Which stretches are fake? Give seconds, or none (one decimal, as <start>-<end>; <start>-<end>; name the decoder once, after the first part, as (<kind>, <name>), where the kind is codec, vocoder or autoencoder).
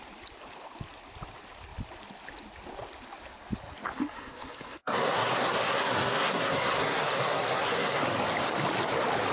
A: 4.0-8.0 (codec, SNAC)